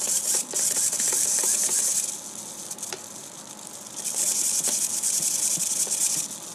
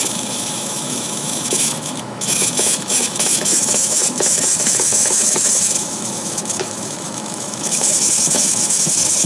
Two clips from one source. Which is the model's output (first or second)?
second